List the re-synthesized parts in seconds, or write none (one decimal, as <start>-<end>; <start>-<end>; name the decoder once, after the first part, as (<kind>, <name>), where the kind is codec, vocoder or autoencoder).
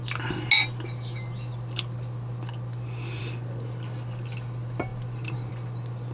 none